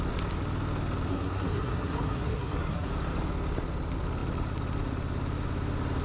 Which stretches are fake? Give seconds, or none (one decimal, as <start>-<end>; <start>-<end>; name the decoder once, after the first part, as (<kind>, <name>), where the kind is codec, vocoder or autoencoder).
1.1-2.9 (codec, SNAC)